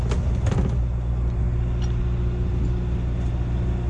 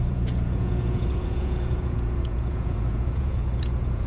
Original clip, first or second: first